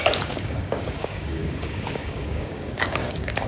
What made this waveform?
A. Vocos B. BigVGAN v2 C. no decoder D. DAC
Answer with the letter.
D